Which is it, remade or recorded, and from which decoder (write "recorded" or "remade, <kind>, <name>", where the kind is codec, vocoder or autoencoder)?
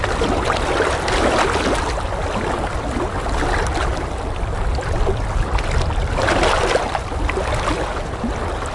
recorded